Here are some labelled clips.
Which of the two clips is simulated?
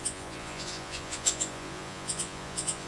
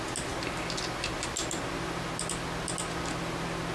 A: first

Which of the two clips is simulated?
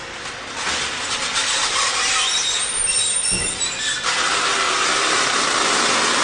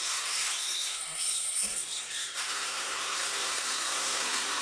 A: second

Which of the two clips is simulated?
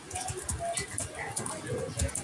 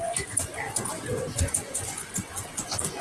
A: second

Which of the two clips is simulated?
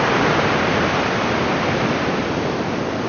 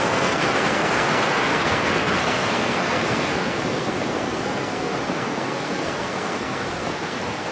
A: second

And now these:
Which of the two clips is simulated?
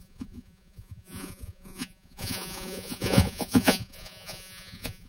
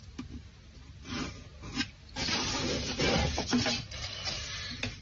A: first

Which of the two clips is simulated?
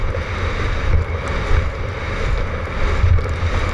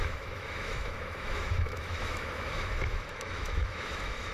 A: second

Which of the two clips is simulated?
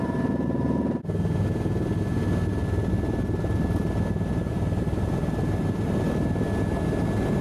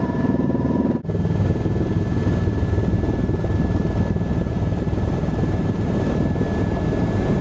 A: second